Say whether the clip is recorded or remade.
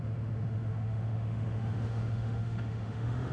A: remade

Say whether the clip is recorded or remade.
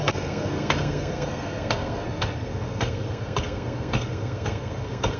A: remade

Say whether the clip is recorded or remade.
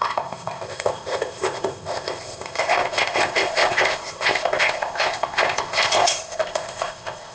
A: remade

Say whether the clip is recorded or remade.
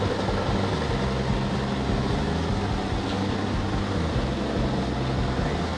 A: recorded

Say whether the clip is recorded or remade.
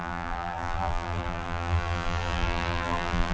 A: remade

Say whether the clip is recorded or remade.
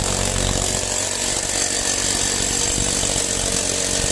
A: recorded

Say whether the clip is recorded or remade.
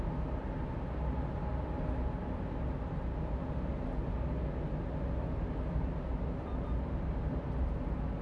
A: recorded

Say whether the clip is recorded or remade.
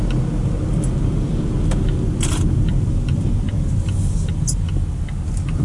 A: recorded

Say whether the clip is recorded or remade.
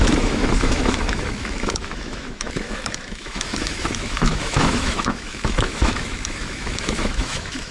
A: remade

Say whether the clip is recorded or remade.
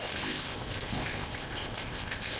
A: remade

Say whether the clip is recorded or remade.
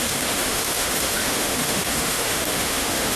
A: remade